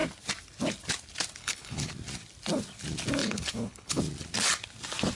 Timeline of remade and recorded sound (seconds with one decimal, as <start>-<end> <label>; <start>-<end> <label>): 0.0-1.4 recorded; 1.4-1.9 remade; 1.9-3.2 recorded; 3.2-4.0 remade; 4.0-5.1 recorded